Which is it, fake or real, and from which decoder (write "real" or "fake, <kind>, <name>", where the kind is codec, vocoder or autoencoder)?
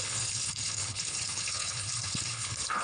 fake, codec, HILCodec